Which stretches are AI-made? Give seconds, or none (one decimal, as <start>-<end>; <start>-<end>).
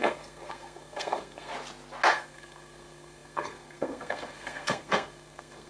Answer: 0.0-1.5; 2.1-5.7